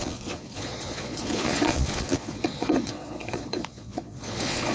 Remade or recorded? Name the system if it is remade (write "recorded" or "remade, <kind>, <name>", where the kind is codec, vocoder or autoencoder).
remade, vocoder, Vocos